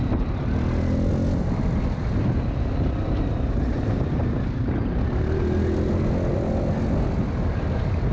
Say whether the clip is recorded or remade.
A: recorded